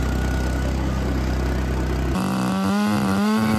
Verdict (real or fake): real